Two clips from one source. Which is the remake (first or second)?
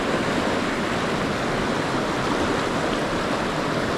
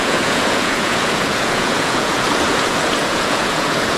second